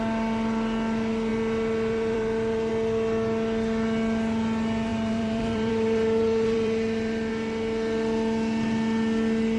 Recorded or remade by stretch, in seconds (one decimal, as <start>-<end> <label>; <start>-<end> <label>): 0.0-1.3 recorded; 1.3-2.7 remade; 2.7-4.9 recorded; 4.9-7.3 remade; 7.3-9.6 recorded